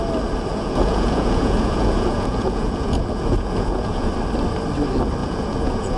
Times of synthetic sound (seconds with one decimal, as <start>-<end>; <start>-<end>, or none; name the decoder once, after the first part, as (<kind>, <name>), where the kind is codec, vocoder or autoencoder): 0.5-4.1 (vocoder, Vocos); 5.2-6.0